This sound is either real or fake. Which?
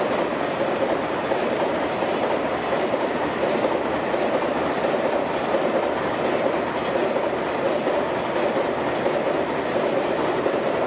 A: real